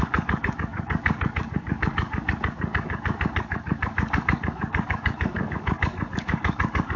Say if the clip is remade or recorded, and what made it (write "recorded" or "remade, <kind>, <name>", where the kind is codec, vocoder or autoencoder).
remade, codec, DAC